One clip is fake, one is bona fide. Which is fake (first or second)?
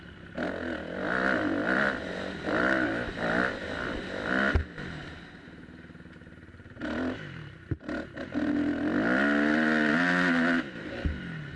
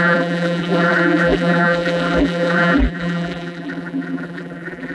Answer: second